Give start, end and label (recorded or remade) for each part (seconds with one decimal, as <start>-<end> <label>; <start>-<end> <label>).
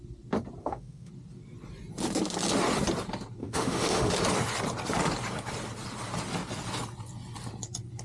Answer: 0.0-0.6 recorded; 0.6-1.1 remade; 1.1-3.4 recorded; 3.4-4.1 remade; 4.1-8.0 recorded